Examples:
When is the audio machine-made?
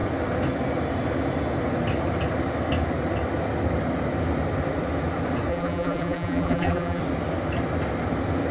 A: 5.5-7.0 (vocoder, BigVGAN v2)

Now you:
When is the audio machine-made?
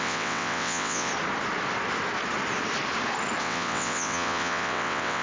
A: 0.0-1.1 (vocoder, WaveNeXt); 3.4-5.2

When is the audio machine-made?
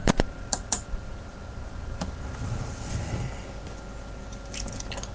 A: 0.0-3.1 (vocoder, BigVGAN v2)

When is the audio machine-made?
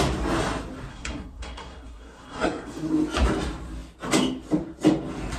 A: 0.9-2.9 (codec, SNAC)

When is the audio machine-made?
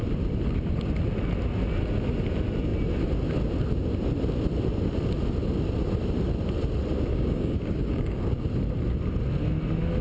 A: 7.1-8.3 (codec, DAC)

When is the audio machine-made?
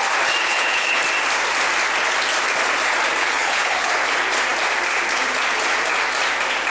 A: 0.4-1.0 (codec, HILCodec); 3.2-3.9